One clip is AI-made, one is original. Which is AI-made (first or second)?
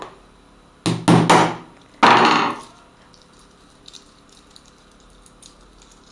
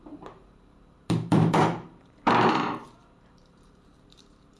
second